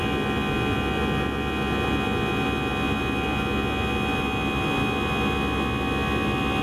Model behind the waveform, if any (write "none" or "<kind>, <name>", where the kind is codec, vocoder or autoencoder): none